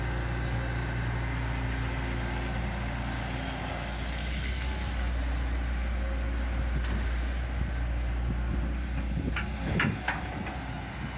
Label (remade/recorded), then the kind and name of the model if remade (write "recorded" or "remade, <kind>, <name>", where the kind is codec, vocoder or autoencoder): recorded